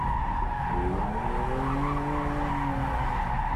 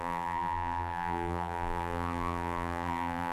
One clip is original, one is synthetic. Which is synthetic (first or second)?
second